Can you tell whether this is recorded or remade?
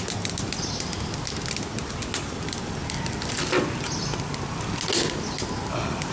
recorded